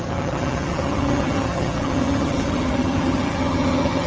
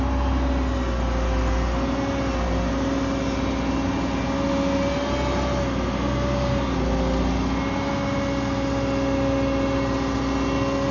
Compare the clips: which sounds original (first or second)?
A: second